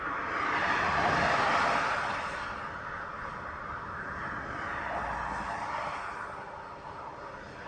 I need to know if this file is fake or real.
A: real